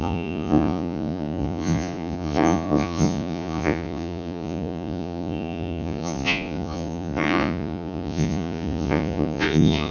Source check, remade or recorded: remade